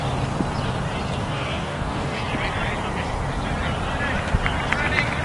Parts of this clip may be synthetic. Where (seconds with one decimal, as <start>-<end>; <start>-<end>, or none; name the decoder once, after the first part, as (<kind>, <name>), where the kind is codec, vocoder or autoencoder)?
1.2-2.2 (codec, DAC)